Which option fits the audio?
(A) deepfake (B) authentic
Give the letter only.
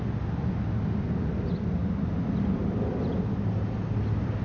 B